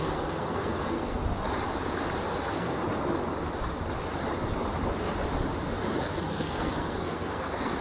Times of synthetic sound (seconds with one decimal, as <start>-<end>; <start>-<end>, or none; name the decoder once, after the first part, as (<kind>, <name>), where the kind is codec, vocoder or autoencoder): 0.0-1.2 (codec, SNAC); 2.4-2.8; 6.2-7.8